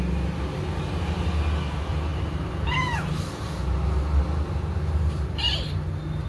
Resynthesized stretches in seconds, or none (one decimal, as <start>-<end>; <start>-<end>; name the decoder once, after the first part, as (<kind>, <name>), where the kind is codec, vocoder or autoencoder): none